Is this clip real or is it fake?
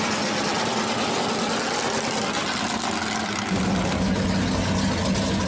real